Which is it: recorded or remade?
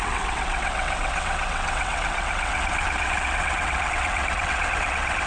remade